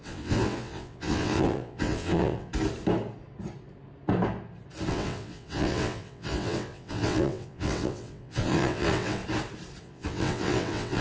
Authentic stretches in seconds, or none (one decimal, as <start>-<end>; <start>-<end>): 2.5-4.9; 9.2-9.8